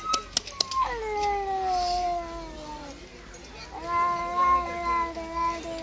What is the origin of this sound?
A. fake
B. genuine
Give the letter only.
B